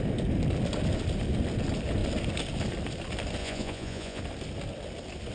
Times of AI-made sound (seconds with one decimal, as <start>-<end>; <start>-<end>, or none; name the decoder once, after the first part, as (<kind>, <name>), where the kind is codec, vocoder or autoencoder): 3.4-4.2 (vocoder, Vocos)